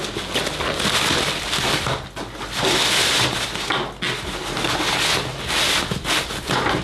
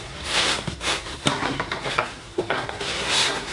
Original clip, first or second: first